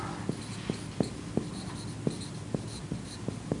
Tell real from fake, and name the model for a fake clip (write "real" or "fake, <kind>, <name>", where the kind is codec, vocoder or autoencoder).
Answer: real